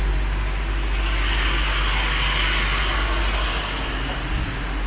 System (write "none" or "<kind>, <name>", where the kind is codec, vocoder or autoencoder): none